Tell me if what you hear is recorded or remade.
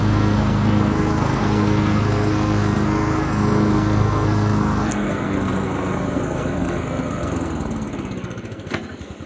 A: remade